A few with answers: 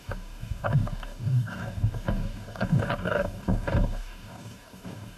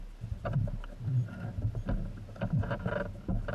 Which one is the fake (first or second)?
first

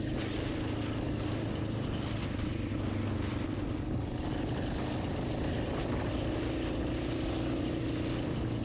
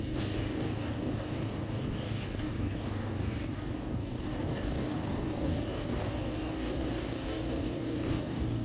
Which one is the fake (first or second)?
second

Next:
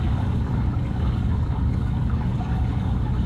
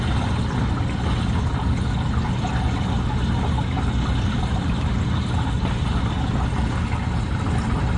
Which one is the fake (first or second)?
first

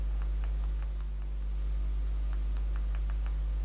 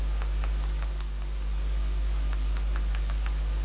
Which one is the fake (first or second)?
second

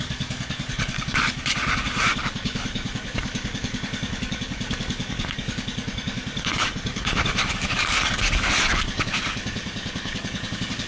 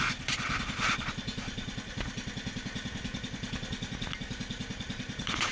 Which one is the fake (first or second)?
first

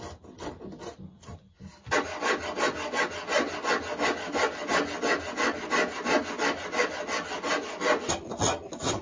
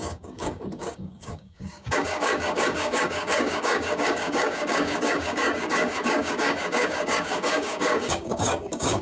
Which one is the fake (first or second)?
second